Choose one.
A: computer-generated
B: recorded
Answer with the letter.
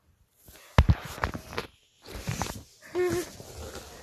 B